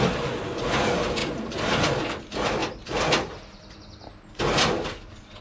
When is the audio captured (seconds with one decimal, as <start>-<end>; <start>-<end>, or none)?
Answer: 0.0-5.4